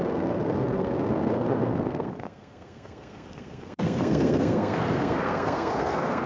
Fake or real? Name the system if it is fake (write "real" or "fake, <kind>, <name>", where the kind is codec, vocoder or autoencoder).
fake, codec, SNAC